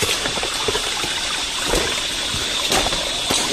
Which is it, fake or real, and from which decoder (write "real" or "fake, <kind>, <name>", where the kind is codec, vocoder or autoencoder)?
real